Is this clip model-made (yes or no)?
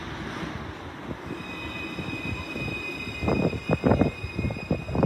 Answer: no